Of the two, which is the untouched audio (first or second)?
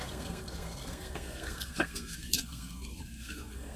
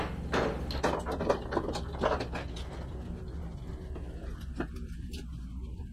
second